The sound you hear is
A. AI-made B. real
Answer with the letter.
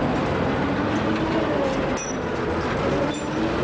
B